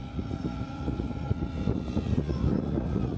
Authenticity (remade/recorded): remade